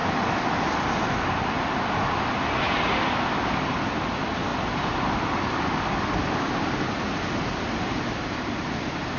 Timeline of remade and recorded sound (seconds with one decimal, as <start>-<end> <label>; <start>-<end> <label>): 0.0-9.2 recorded

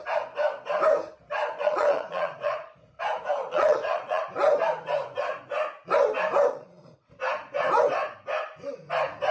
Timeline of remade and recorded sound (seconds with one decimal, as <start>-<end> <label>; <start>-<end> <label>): 0.0-1.4 recorded; 1.4-2.9 remade; 2.9-3.4 recorded; 3.4-4.2 remade; 4.2-6.5 recorded; 6.5-7.1 remade; 7.1-9.3 recorded

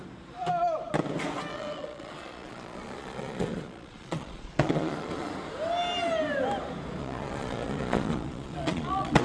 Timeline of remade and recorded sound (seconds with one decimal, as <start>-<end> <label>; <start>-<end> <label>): 0.0-1.5 recorded; 1.5-5.3 remade; 5.3-7.0 recorded; 7.0-9.2 remade